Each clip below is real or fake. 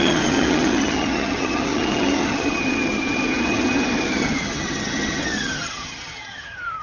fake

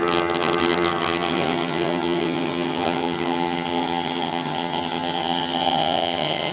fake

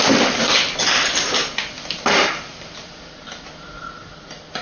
real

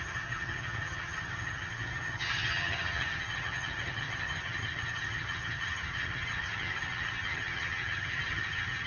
fake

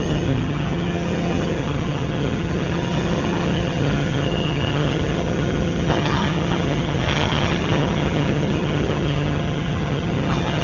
fake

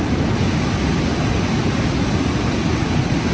real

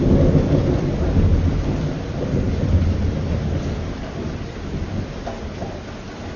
real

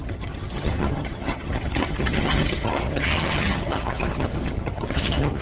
fake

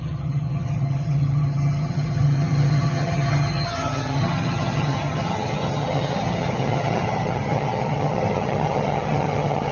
fake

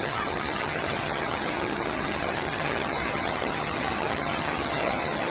fake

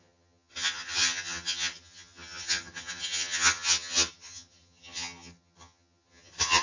fake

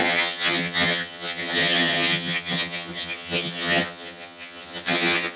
fake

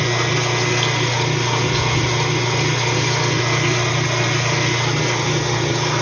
real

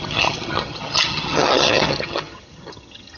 fake